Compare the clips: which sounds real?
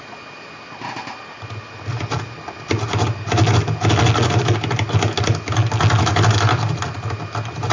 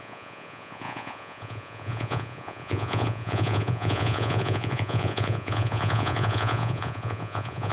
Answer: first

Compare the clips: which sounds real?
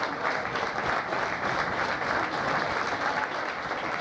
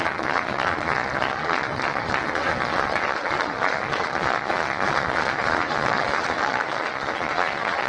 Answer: first